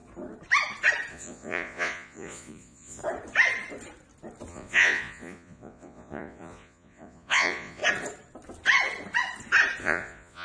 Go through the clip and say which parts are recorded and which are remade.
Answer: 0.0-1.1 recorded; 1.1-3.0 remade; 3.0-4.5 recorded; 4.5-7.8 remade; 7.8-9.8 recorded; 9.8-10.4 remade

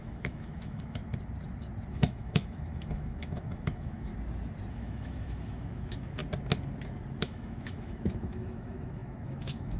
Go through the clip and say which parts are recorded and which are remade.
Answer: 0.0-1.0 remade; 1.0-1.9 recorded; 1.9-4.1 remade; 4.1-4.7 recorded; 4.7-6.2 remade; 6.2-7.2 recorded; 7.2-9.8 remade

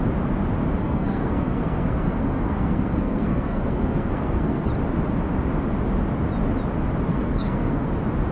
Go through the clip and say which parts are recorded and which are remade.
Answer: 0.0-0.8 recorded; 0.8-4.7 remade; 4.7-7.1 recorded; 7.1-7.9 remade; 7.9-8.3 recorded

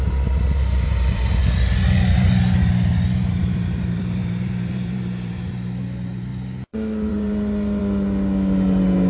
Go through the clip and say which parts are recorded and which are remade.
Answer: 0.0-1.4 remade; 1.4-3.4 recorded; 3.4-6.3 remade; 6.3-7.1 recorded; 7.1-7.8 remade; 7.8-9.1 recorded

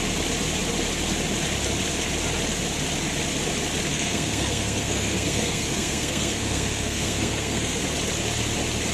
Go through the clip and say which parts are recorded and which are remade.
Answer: 0.0-3.9 recorded; 3.9-7.8 remade; 7.8-8.9 recorded